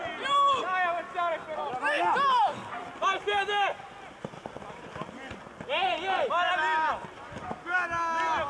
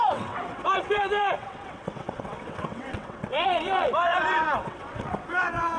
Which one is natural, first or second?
first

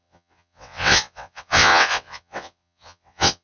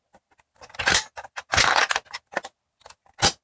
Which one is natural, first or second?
second